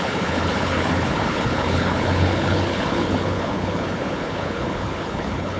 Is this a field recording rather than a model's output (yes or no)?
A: no